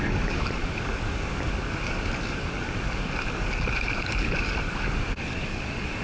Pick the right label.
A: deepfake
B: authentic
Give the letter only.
A